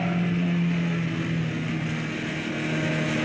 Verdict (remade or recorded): recorded